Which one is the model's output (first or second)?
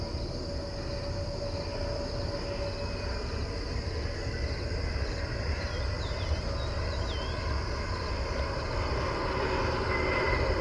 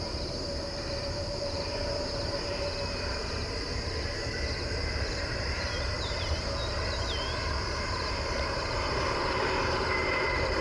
second